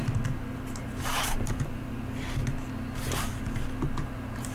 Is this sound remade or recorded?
recorded